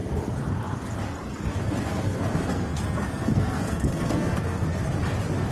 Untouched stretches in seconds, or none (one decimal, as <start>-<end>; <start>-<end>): 0.0-1.5; 4.8-5.5